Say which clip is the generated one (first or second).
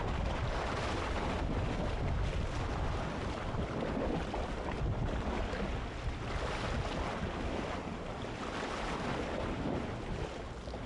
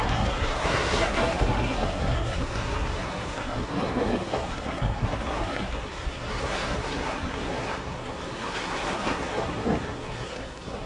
second